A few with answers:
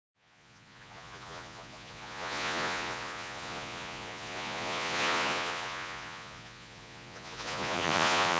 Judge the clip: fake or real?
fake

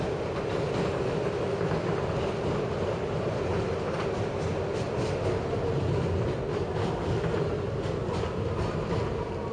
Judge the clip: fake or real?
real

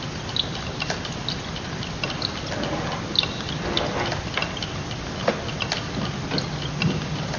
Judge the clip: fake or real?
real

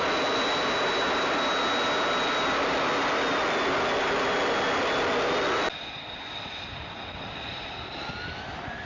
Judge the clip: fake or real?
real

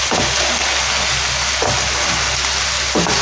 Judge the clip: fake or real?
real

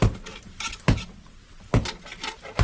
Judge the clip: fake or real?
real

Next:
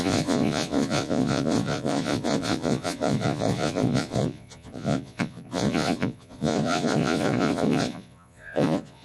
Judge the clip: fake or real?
fake